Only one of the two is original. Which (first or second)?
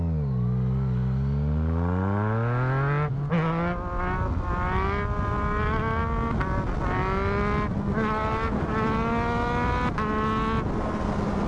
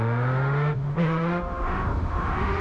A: first